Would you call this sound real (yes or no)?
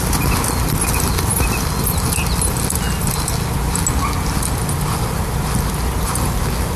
yes